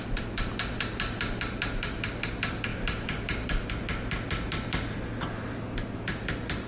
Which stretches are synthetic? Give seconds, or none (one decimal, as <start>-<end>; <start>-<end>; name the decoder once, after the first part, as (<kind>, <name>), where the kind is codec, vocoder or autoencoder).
none